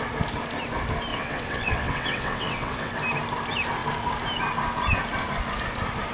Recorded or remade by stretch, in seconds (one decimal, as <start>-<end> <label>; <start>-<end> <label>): 0.0-1.1 recorded; 1.1-2.9 remade; 2.9-6.1 recorded